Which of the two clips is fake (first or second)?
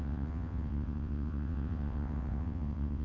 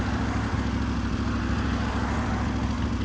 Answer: first